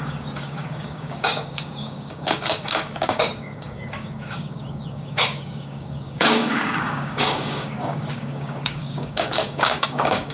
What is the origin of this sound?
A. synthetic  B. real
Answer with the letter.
A